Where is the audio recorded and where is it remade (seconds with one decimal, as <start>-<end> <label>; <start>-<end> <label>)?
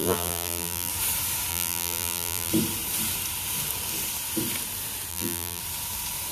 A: 0.0-0.9 remade; 0.9-1.5 recorded; 1.5-2.5 remade; 2.5-5.1 recorded; 5.1-5.6 remade; 5.6-6.3 recorded